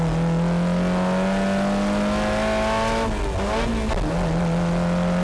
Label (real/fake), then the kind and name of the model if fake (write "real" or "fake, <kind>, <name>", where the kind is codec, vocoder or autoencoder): real